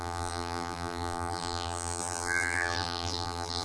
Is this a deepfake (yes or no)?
yes